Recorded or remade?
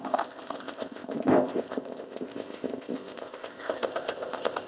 remade